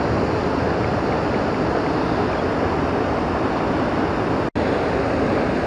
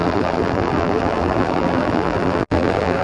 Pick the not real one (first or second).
second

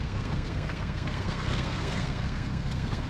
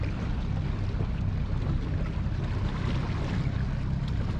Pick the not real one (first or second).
first